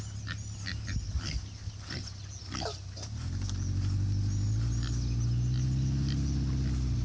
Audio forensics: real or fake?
real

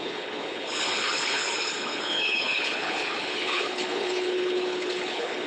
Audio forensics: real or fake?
fake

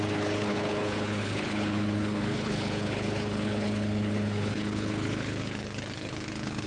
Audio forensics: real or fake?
fake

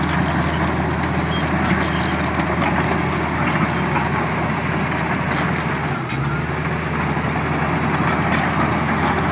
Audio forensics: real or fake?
real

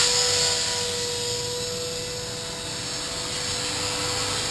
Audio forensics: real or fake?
real